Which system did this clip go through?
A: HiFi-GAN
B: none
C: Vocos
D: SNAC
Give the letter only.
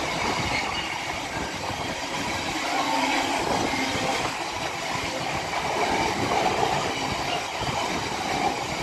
B